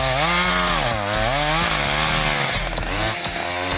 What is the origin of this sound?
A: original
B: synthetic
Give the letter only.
A